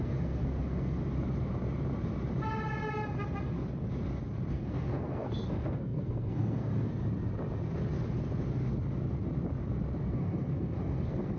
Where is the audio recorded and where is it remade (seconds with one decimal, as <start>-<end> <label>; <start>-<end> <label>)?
0.0-1.0 remade; 1.0-4.5 recorded; 4.5-6.9 remade; 6.9-10.1 recorded; 10.1-11.4 remade